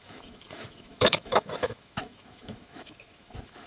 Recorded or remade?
remade